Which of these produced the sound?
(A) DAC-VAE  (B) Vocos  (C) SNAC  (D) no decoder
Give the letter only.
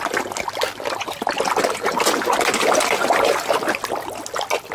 D